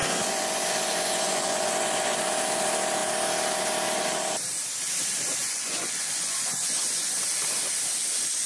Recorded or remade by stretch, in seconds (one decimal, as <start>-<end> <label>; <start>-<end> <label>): 0.0-2.3 remade; 2.3-5.4 recorded; 5.4-7.2 remade; 7.2-8.5 recorded